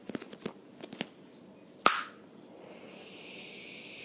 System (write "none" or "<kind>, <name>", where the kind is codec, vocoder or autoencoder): none